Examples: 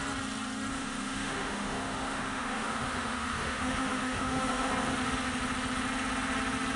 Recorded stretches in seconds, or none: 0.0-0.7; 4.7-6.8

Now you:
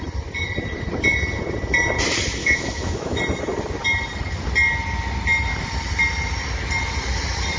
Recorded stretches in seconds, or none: 0.0-2.4; 3.2-7.6